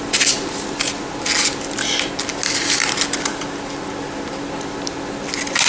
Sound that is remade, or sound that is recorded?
recorded